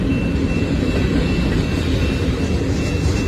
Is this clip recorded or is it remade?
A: recorded